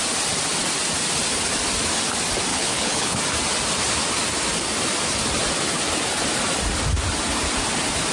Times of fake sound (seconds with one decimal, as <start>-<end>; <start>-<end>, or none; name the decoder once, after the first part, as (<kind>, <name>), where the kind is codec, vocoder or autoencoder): 2.5-3.2 (codec, HILCodec)